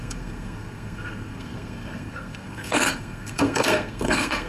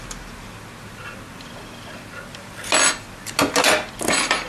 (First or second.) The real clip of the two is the second